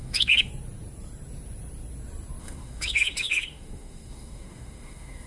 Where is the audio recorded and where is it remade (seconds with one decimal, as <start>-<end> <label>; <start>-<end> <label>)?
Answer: 0.0-0.5 remade; 0.5-2.4 recorded; 2.4-5.3 remade